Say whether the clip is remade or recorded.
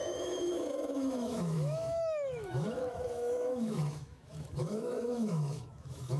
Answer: remade